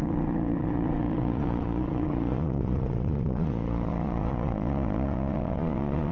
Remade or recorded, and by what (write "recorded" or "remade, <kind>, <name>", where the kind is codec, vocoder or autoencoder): remade, vocoder, Vocos